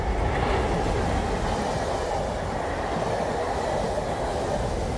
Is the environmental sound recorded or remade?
recorded